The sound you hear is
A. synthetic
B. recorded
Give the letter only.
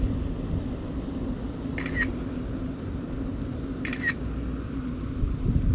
B